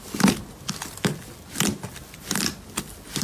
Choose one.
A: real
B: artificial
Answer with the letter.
A